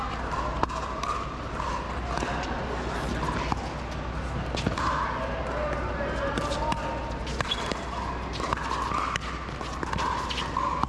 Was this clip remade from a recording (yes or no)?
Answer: no